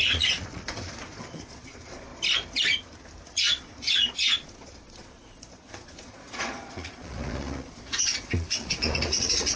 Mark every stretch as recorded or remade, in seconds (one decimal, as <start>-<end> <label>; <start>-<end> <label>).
0.0-2.1 remade; 2.1-3.3 recorded; 3.3-9.6 remade